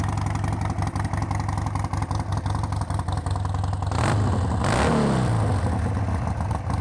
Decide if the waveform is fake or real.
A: real